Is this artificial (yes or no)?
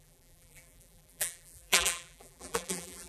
yes